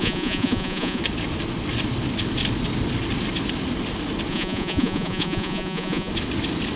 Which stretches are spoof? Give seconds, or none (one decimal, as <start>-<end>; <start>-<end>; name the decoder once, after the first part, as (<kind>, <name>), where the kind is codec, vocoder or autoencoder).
0.0-1.0 (vocoder, Vocos); 4.3-6.1